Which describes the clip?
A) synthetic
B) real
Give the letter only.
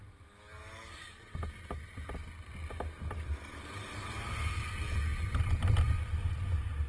B